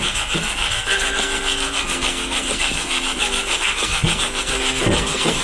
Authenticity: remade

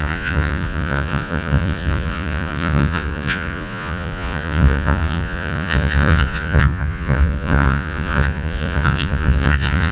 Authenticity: remade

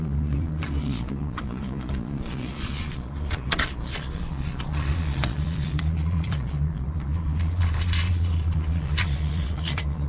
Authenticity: remade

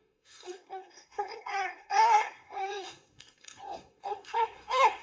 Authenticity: remade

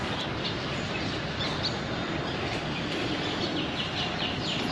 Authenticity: recorded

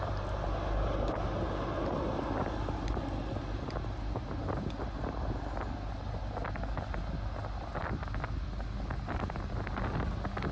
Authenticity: recorded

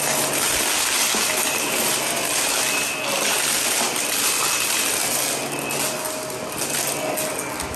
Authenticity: recorded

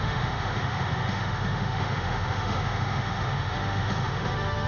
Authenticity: remade